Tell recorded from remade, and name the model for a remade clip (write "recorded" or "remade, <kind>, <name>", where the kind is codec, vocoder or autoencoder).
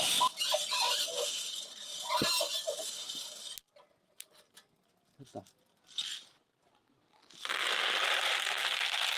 recorded